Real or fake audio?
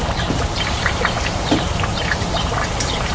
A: fake